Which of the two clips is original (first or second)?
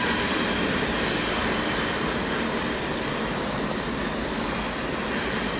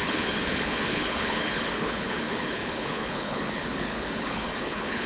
first